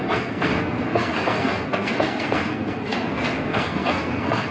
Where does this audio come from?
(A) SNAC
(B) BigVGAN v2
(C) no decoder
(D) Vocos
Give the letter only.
A